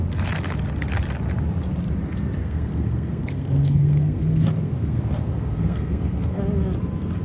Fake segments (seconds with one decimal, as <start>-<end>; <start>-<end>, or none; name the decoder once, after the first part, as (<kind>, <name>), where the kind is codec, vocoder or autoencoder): 2.4-6.4 (codec, SNAC)